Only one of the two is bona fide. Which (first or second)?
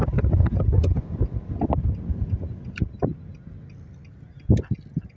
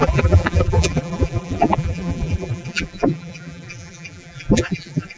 first